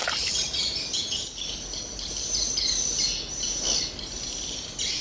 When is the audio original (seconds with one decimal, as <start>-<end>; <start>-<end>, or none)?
0.0-5.0